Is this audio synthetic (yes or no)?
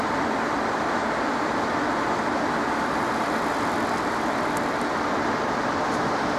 yes